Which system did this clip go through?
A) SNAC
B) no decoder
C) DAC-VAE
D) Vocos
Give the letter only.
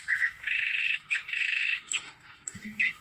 C